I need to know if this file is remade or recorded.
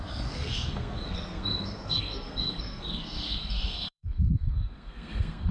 remade